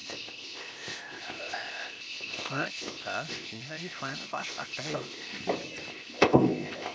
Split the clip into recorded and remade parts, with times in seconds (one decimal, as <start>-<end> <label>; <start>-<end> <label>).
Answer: 0.0-5.4 remade; 5.4-5.9 recorded; 5.9-6.9 remade